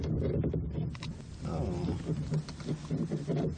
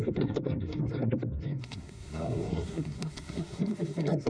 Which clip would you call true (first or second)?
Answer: first